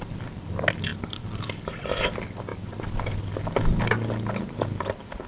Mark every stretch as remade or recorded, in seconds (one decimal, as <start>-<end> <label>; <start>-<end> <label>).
0.0-0.9 recorded; 0.9-1.9 remade; 1.9-5.3 recorded